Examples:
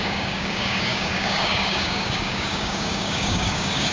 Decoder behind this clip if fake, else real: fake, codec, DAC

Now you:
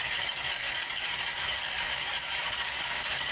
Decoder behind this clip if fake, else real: fake, codec, DAC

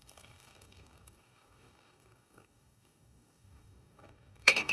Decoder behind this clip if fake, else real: fake, codec, DAC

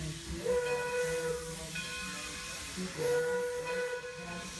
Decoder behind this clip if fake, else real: real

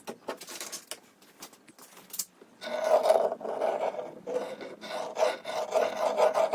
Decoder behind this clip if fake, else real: real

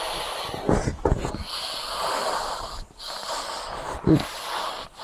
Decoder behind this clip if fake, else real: real